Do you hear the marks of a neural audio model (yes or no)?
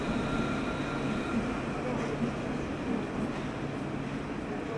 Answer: no